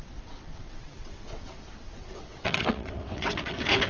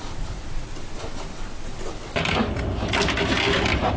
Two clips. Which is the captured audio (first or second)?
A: second